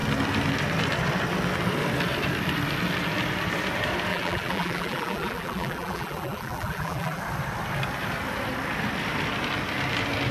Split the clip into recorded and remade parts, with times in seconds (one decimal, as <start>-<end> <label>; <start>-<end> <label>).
0.0-4.1 recorded; 4.1-7.2 remade; 7.2-10.3 recorded